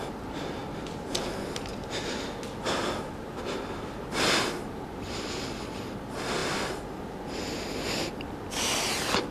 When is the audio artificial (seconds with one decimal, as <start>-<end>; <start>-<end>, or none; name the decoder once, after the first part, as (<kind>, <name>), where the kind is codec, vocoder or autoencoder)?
none